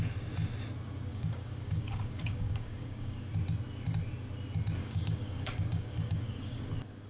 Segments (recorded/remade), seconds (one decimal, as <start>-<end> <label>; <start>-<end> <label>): 0.0-1.1 recorded; 1.1-3.3 remade; 3.3-4.8 recorded; 4.8-6.6 remade; 6.6-7.1 recorded

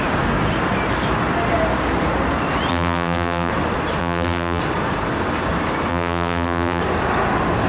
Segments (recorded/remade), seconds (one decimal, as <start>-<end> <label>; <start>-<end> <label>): 0.0-2.7 recorded; 2.7-3.5 remade; 3.5-4.0 recorded; 4.0-4.6 remade; 4.6-5.9 recorded; 5.9-6.8 remade; 6.8-7.7 recorded

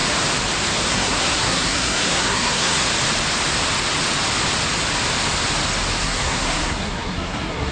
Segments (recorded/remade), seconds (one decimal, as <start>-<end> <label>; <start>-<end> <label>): 0.0-0.9 recorded; 0.9-2.9 remade; 2.9-6.0 recorded; 6.0-7.7 remade